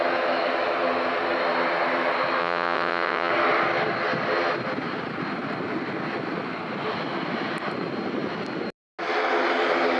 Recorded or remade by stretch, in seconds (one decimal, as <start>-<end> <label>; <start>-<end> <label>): 0.0-2.4 recorded; 2.4-3.3 remade; 3.3-10.0 recorded